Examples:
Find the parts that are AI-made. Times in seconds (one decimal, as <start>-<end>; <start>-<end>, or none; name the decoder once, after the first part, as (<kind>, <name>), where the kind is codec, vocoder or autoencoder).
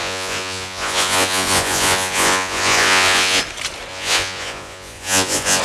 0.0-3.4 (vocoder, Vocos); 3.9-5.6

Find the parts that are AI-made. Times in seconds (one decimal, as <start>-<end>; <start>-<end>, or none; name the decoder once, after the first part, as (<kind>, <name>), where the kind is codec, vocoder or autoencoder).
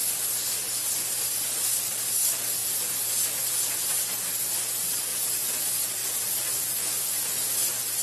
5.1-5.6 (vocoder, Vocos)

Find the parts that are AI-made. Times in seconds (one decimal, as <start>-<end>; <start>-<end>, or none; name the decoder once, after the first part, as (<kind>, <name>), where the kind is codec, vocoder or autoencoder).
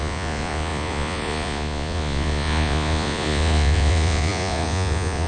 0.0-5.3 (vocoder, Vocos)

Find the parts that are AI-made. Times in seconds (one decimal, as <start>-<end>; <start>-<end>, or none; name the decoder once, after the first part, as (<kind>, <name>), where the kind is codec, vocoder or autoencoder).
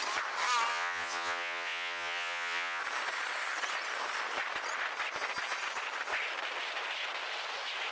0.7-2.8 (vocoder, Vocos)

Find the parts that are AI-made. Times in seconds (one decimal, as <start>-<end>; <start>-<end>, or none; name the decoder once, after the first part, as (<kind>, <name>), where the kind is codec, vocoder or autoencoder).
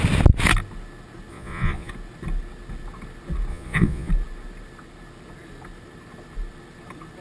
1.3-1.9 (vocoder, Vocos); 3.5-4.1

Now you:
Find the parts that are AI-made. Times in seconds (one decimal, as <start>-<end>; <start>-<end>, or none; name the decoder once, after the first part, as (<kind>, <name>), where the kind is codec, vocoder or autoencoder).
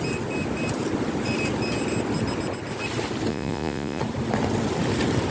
3.3-4.0 (vocoder, Vocos)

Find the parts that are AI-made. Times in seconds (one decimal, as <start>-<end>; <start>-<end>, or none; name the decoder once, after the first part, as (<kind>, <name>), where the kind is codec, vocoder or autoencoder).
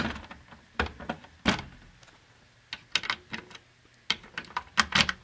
none